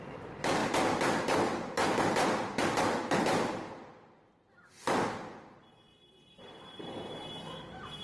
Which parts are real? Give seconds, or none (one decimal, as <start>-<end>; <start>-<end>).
0.0-8.0